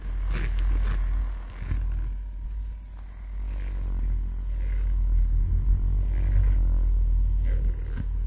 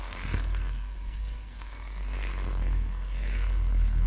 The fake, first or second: second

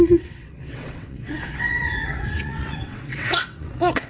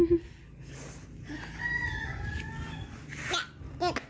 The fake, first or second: first